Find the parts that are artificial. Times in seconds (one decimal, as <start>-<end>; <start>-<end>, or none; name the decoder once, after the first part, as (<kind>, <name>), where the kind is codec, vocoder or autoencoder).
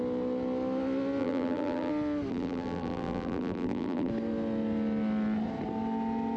1.2-1.9 (vocoder, BigVGAN v2); 2.3-4.1